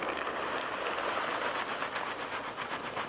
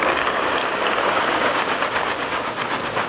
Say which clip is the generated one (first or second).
second